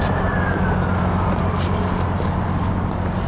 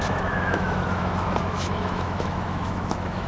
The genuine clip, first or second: first